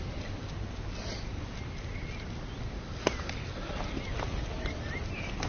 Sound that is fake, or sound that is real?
real